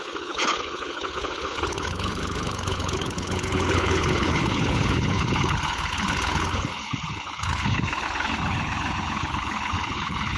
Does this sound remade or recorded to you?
remade